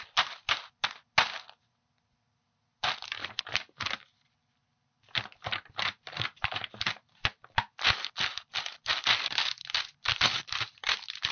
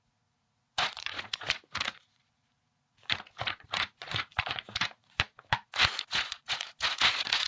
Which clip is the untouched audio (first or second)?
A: first